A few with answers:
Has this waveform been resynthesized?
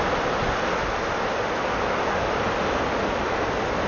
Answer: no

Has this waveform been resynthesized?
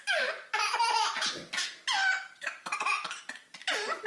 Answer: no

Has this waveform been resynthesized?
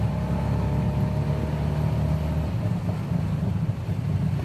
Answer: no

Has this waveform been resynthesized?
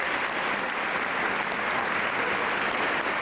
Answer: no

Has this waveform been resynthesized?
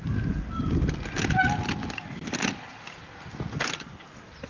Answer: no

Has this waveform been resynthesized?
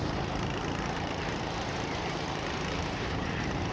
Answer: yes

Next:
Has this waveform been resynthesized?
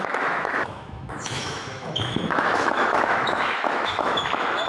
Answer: yes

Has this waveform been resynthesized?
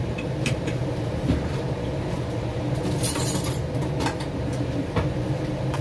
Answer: yes